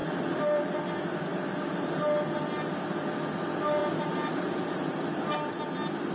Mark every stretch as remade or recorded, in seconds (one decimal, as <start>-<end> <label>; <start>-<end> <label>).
0.0-0.8 remade; 0.8-1.3 recorded; 1.3-2.0 remade; 2.0-3.8 recorded; 3.8-5.5 remade; 5.5-6.1 recorded